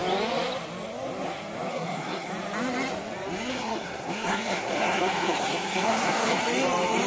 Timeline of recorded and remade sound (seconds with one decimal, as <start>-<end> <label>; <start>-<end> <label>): 0.0-1.7 recorded; 1.7-2.3 remade; 2.3-3.5 recorded; 3.5-6.4 remade; 6.4-7.1 recorded